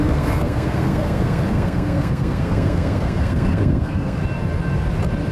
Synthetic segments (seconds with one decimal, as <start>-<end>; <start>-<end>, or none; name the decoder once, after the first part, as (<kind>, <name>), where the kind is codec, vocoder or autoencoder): 0.0-4.2 (codec, SNAC)